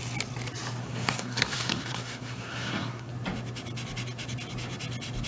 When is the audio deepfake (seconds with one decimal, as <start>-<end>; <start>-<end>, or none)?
0.8-3.1